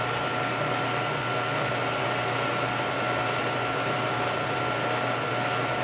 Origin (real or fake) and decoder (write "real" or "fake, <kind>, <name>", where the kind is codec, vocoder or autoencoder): real